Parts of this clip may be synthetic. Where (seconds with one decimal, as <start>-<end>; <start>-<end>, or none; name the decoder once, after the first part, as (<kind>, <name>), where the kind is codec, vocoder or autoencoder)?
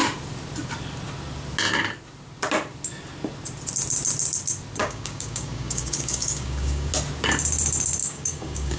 4.8-6.9 (codec, DAC); 8.0-8.8